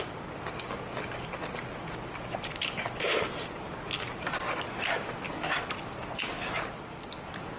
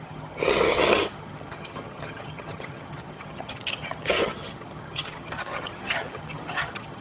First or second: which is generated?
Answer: second